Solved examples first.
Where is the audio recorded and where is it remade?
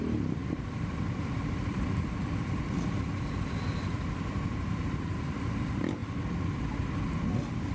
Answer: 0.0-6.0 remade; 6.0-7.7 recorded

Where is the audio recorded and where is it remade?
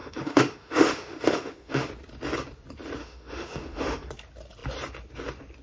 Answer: 0.0-1.9 remade; 1.9-3.0 recorded; 3.0-4.1 remade; 4.1-5.6 recorded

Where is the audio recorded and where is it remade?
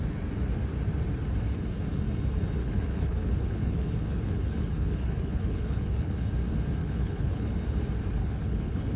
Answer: 0.0-2.6 recorded; 2.6-6.3 remade; 6.3-6.8 recorded; 6.8-7.5 remade; 7.5-8.2 recorded; 8.2-9.0 remade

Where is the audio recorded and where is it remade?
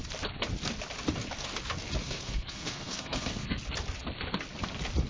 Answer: 0.0-2.0 recorded; 2.0-3.6 remade; 3.6-5.1 recorded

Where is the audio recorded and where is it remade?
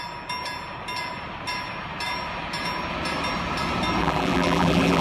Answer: 0.0-4.0 recorded; 4.0-5.0 remade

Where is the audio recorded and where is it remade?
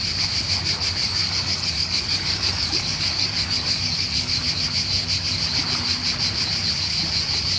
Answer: 0.0-1.0 recorded; 1.0-4.4 remade; 4.4-7.6 recorded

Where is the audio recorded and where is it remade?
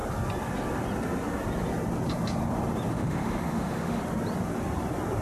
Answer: 0.0-2.9 recorded; 2.9-4.0 remade; 4.0-5.2 recorded